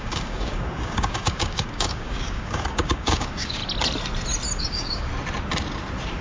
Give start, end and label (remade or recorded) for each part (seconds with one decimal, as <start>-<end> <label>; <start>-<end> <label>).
0.0-3.6 remade; 3.6-4.6 recorded; 4.6-5.1 remade; 5.1-6.2 recorded